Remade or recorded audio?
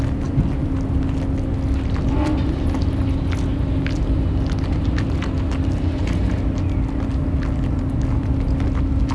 recorded